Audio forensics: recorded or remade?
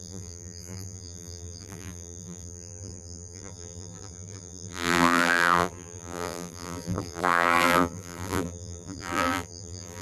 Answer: remade